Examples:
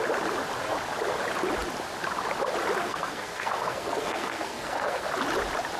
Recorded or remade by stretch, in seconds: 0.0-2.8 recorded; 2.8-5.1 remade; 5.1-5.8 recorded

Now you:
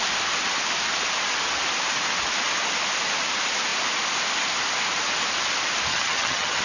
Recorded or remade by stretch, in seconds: 0.0-5.9 recorded; 5.9-6.6 remade

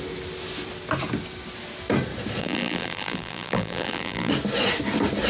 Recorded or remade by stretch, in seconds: 0.0-2.4 recorded; 2.4-4.3 remade; 4.3-5.3 recorded

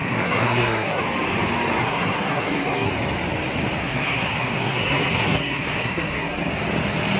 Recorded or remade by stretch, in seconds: 0.0-1.0 remade; 1.0-1.8 recorded; 1.8-2.9 remade; 2.9-3.8 recorded; 3.8-6.5 remade; 6.5-7.2 recorded

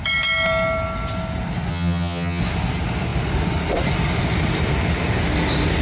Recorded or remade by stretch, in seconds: 0.0-1.7 recorded; 1.7-2.4 remade; 2.4-5.8 recorded

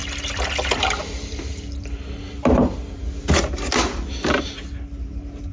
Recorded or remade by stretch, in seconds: 0.0-5.5 recorded

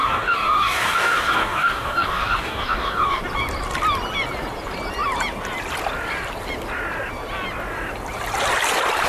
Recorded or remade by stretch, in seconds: 0.0-3.2 remade; 3.2-9.1 recorded

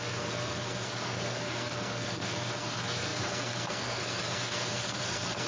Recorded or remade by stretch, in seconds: 0.0-5.5 remade